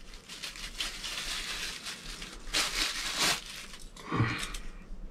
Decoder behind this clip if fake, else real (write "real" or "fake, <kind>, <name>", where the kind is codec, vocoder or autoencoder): real